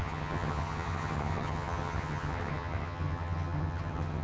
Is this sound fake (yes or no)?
yes